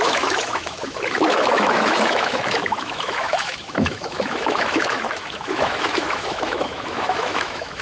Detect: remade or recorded remade